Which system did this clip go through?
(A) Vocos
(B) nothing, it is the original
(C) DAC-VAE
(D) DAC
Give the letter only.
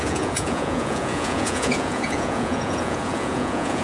A